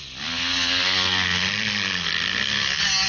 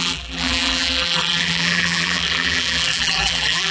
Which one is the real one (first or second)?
first